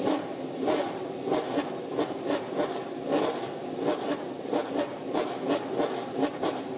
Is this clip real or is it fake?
real